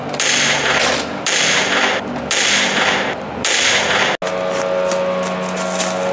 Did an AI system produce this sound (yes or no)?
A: no